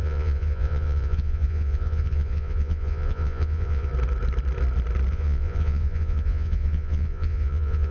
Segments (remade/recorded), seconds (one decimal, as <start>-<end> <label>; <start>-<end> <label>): 0.0-3.9 remade; 3.9-5.1 recorded; 5.1-7.9 remade